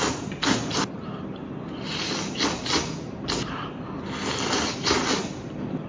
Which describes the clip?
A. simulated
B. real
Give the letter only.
B